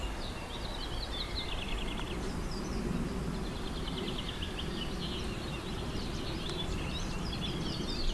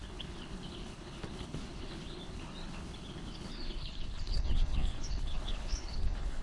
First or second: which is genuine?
first